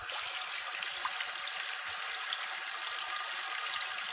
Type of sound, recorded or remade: recorded